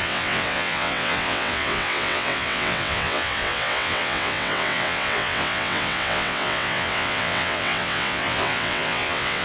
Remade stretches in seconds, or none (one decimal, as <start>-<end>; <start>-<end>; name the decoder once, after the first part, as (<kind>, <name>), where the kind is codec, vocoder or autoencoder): 0.0-9.4 (vocoder, WaveNeXt)